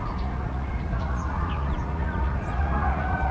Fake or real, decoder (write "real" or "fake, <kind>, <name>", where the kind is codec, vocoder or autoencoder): fake, vocoder, Vocos